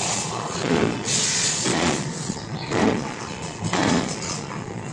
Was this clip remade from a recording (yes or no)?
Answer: yes